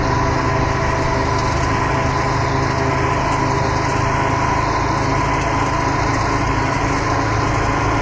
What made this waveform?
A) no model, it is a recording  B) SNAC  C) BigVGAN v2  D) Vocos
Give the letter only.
A